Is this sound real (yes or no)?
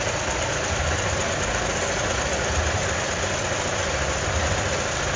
yes